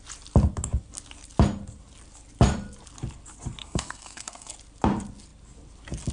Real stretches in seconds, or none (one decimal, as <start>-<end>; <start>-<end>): 0.0-3.6; 4.5-6.1